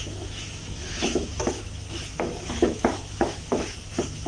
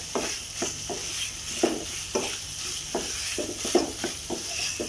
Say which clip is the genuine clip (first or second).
second